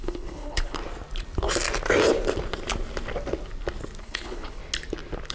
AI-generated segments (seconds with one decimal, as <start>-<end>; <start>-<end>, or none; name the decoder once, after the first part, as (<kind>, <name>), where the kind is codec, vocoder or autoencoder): 0.0-0.8 (codec, HILCodec); 4.0-4.6